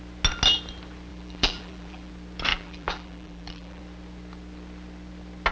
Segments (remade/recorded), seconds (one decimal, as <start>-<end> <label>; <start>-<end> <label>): 0.0-1.1 recorded; 1.1-2.1 remade; 2.1-2.5 recorded; 2.5-3.8 remade; 3.8-5.5 recorded

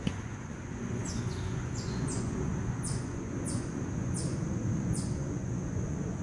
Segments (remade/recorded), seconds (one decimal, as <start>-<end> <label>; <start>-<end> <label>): 0.0-6.2 remade

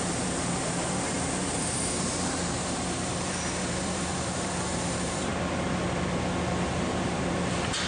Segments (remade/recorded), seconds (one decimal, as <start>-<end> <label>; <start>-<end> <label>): 0.0-5.3 remade; 5.3-6.7 recorded; 6.7-7.9 remade